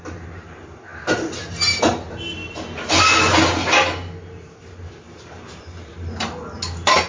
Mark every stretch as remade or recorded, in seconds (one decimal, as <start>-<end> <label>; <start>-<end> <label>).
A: 0.0-7.1 recorded